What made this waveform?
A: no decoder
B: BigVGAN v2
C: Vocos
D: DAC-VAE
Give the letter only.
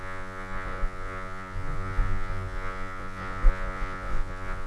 C